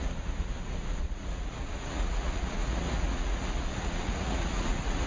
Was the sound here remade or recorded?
remade